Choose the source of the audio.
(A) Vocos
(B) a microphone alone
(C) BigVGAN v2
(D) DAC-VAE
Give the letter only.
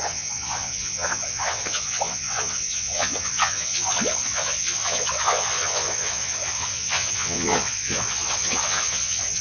A